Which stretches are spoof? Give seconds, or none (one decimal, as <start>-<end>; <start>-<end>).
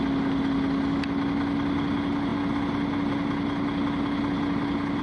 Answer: none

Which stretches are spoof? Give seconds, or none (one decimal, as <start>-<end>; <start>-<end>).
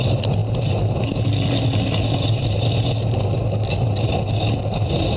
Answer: none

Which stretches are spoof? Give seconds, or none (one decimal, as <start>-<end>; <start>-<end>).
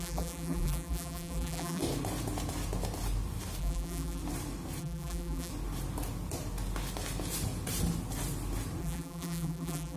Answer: 0.0-1.8; 3.6-4.2; 4.8-5.5; 8.8-10.0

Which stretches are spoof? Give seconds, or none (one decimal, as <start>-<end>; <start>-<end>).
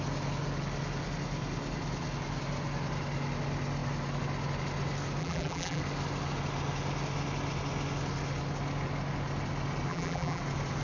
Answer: 5.2-5.8; 9.9-10.4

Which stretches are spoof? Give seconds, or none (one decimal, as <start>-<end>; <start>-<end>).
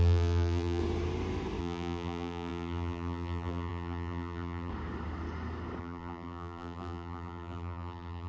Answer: 0.0-0.8; 1.6-4.7; 5.8-8.3